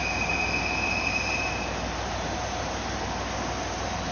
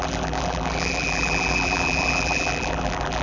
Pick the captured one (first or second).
first